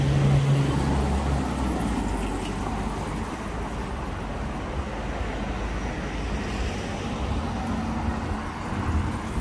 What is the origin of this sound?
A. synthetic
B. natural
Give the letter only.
B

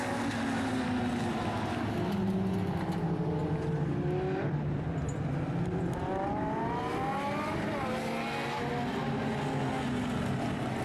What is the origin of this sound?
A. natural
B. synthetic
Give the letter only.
A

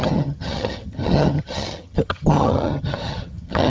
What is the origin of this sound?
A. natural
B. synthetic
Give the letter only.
B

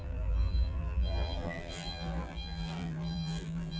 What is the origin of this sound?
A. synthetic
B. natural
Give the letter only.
A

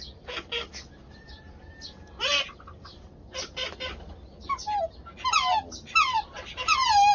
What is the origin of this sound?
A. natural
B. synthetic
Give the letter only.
A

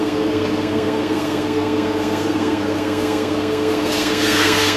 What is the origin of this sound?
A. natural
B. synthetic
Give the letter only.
B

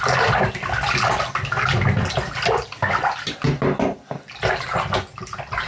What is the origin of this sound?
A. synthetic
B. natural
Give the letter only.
B